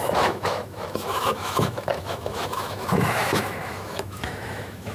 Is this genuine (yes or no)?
no